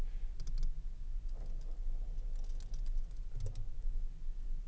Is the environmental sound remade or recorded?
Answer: recorded